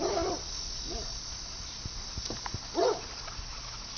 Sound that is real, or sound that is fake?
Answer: real